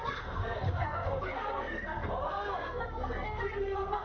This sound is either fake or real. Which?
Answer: fake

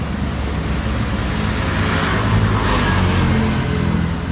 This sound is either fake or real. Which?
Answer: real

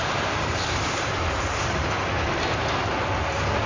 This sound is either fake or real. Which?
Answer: fake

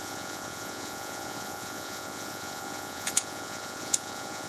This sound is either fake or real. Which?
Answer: fake